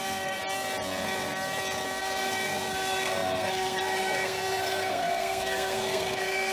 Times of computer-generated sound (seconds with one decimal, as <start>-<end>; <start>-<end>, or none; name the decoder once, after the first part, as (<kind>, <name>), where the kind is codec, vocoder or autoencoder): 0.0-0.4 (codec, SNAC); 2.0-6.5

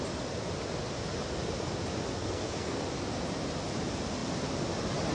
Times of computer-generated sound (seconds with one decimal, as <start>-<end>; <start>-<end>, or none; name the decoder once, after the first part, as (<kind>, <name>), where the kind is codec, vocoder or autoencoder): 2.2-2.8 (codec, SNAC)

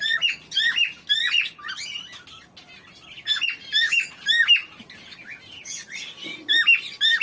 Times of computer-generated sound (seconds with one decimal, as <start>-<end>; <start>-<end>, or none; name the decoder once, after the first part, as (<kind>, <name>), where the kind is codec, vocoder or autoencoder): none

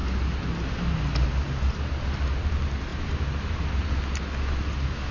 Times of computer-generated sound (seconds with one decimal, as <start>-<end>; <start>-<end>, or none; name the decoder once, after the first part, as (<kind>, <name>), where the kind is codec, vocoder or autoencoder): none

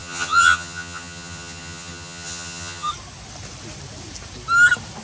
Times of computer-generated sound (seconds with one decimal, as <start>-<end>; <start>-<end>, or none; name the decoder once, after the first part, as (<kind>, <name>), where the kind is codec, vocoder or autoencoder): 0.0-2.9 (vocoder, HiFi-GAN)

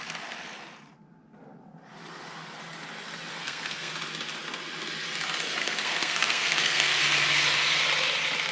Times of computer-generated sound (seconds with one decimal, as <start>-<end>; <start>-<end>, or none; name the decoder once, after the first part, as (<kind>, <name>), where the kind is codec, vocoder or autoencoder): 3.3-3.9 (codec, SNAC); 5.6-7.0

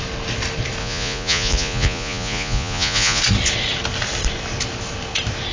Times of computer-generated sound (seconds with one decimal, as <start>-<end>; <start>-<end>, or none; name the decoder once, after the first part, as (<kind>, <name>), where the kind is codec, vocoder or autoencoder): 0.8-3.2 (vocoder, Vocos)